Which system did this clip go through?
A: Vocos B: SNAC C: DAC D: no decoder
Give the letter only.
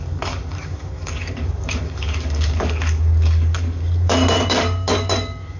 C